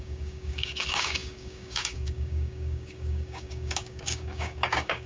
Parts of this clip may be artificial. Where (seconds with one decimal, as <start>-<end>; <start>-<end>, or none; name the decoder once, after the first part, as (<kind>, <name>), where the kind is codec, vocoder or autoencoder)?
0.0-5.1 (codec, DAC)

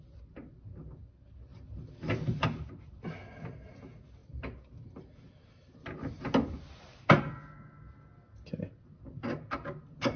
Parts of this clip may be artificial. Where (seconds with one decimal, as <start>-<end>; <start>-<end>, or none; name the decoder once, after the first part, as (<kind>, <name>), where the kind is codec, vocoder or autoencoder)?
none